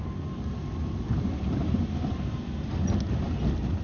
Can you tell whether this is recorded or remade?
recorded